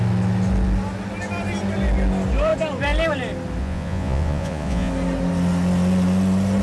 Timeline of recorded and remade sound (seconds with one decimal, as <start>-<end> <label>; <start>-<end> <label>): 0.0-3.6 recorded; 3.6-4.9 remade; 4.9-6.6 recorded